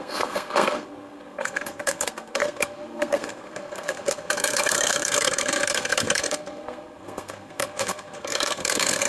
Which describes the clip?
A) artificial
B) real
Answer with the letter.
A